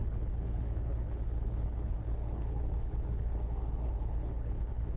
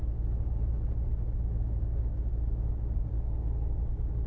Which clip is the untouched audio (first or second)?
second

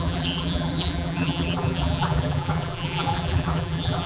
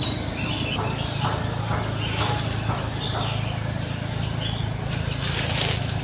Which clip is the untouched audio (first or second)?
second